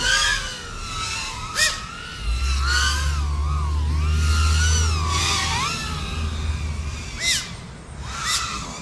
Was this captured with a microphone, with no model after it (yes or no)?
yes